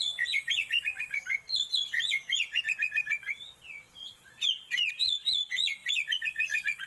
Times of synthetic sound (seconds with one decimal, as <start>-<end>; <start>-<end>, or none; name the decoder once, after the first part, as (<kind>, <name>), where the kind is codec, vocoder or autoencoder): 0.0-6.9 (vocoder, Vocos)